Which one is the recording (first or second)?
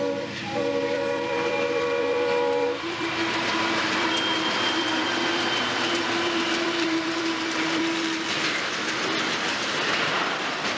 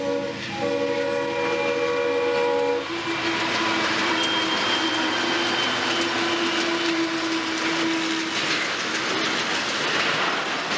second